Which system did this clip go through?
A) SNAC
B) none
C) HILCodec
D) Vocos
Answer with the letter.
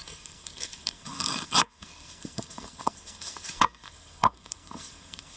A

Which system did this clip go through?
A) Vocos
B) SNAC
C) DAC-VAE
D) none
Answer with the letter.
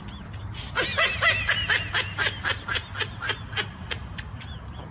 D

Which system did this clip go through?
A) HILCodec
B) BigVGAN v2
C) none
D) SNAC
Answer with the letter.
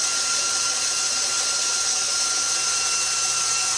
C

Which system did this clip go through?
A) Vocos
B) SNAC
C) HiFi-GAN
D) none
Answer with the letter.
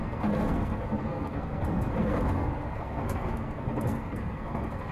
B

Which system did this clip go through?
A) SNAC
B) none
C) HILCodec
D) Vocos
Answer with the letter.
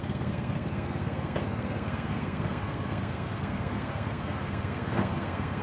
A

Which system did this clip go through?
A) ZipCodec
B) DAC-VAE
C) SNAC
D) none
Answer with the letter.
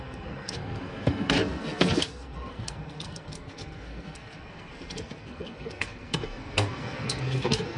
C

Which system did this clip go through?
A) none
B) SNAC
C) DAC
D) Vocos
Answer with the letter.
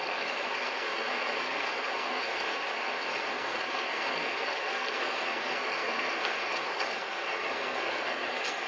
B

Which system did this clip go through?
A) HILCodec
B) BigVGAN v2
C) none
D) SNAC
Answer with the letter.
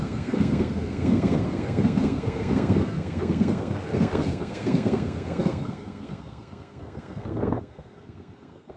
D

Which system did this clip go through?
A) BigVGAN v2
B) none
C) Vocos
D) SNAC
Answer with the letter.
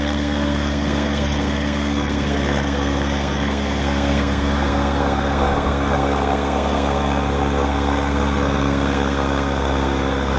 D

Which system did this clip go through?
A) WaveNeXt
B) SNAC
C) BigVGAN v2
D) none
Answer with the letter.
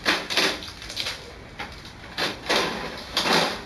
D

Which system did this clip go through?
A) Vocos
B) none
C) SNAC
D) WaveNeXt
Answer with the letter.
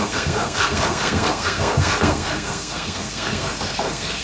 C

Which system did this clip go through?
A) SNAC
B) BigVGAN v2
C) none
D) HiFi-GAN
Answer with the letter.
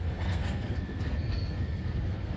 A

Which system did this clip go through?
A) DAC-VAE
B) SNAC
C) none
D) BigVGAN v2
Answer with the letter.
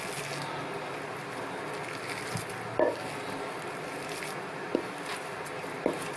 C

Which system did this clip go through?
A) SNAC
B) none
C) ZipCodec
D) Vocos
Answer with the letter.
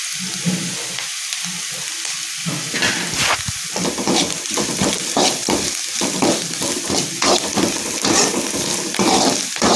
B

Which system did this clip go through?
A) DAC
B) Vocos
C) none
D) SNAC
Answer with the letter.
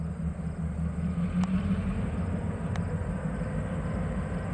C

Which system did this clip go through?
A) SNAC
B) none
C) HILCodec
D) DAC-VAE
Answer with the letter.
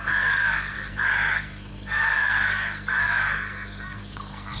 A